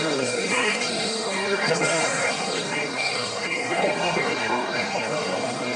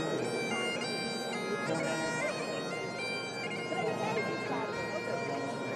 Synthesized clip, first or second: first